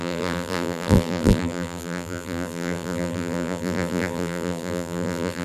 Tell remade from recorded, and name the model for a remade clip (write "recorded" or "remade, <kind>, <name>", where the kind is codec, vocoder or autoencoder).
remade, vocoder, BigVGAN v2